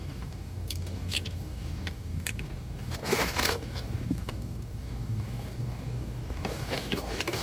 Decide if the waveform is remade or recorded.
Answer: remade